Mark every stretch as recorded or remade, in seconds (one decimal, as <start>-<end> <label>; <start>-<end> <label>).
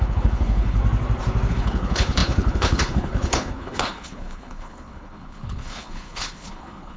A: 0.0-0.8 remade; 0.8-1.5 recorded; 1.5-7.0 remade